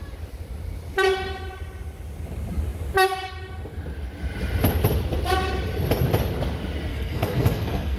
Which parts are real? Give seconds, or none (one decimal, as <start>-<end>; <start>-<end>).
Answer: 0.0-6.9